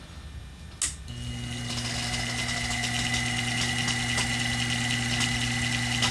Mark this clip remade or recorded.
recorded